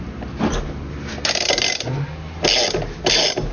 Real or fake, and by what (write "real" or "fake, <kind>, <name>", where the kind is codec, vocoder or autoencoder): real